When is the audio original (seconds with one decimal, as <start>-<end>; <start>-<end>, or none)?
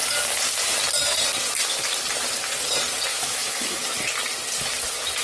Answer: 0.0-3.1; 3.8-5.2